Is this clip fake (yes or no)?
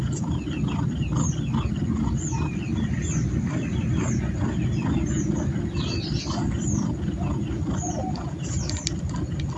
no